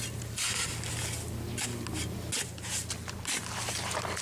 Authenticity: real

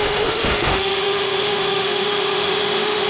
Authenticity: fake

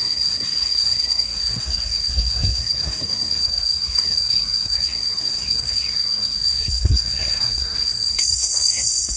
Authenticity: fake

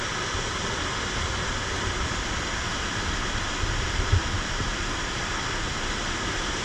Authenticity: real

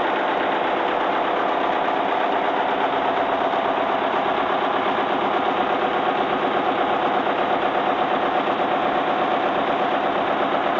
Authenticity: real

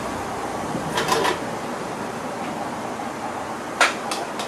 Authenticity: real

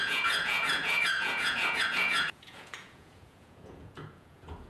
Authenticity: fake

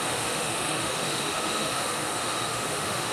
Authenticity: fake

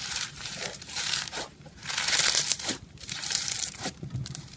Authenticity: fake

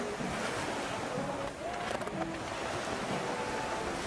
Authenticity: real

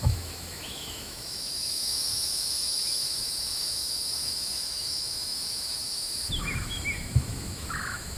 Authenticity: fake